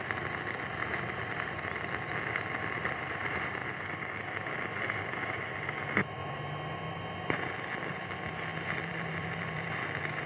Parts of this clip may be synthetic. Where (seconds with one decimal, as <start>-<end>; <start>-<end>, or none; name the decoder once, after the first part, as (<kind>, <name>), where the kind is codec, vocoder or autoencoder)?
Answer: 3.6-4.2 (vocoder, BigVGAN v2); 8.5-9.8